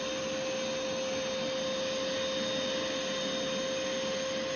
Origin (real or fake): real